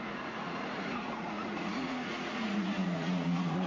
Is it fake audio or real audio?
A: fake